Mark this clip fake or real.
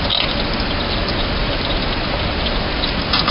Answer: real